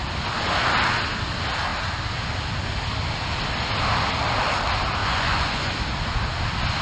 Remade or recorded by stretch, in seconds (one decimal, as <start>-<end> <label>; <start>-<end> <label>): 0.0-5.0 recorded; 5.0-5.7 remade; 5.7-6.8 recorded

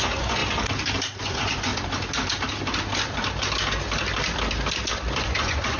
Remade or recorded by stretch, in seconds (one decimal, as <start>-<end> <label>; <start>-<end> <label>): 0.0-0.4 remade; 0.4-1.2 recorded; 1.2-1.7 remade; 1.7-5.2 recorded; 5.2-5.8 remade

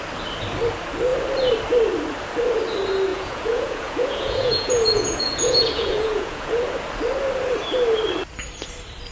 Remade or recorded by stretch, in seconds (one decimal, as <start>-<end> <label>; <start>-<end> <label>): 0.0-3.1 recorded; 3.1-6.6 remade; 6.6-9.1 recorded

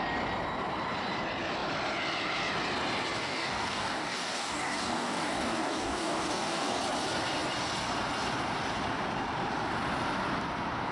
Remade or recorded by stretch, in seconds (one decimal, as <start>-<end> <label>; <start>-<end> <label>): 0.0-3.2 recorded; 3.2-6.8 remade; 6.8-10.9 recorded